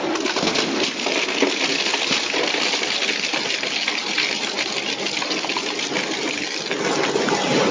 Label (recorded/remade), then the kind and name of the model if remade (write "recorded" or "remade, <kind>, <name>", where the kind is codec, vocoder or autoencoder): recorded